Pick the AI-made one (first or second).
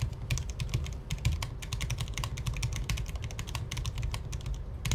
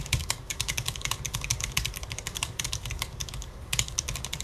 second